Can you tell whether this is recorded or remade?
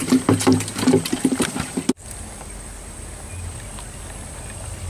recorded